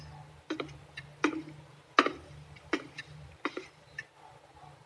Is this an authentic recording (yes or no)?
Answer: no